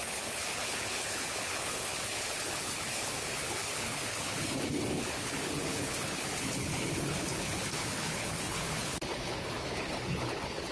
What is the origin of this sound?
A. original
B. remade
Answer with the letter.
B